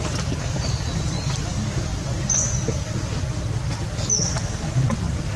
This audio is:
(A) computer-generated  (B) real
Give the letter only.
B